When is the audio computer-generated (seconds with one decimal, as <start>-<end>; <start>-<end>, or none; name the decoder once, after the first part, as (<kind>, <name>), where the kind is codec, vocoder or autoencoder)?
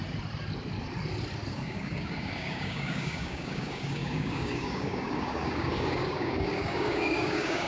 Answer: 1.5-7.7 (codec, DAC)